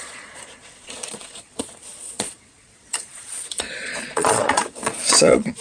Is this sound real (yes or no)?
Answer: no